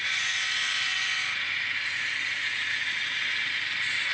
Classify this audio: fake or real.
fake